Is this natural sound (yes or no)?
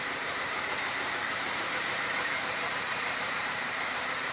no